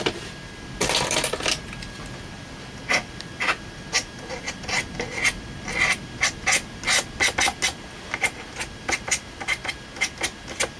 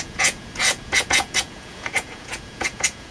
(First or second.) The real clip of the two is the first